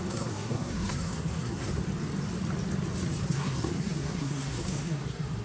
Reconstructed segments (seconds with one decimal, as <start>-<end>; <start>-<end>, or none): 0.0-1.8; 3.2-5.4

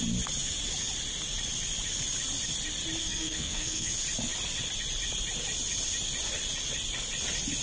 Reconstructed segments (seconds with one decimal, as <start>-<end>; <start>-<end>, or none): 3.0-3.9

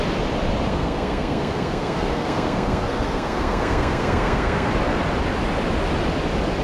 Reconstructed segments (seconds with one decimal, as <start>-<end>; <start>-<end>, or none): 0.7-4.7

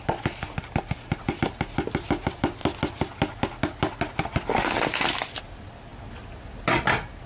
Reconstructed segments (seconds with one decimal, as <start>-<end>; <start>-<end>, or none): none

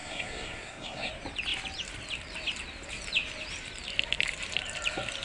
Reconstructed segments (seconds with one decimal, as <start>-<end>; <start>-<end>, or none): 0.0-1.1

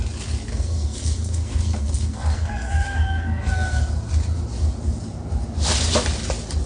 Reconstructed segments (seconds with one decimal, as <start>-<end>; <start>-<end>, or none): 0.5-3.8